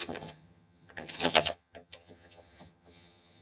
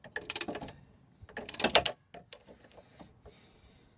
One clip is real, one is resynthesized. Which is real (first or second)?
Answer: second